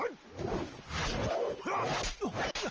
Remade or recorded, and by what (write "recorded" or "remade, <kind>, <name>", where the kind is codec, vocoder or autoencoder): recorded